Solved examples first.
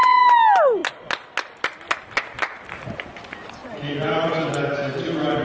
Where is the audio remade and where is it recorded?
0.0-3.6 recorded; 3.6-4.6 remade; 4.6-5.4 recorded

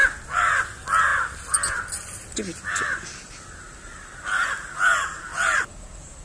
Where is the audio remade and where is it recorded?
0.0-6.2 recorded

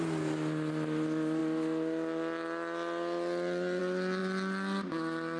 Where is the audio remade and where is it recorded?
0.0-5.4 recorded